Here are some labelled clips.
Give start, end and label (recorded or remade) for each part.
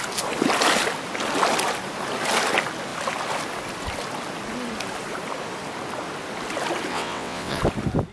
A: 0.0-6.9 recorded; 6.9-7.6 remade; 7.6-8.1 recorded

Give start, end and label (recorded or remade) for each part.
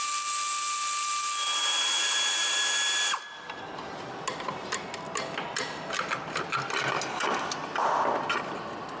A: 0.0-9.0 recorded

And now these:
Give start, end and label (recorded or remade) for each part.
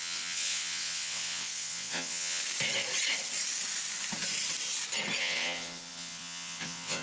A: 0.0-2.4 remade; 2.4-5.2 recorded; 5.2-7.0 remade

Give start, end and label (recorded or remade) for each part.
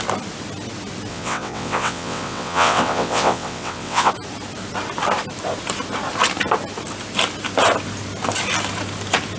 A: 0.0-1.1 recorded; 1.1-4.1 remade; 4.1-9.4 recorded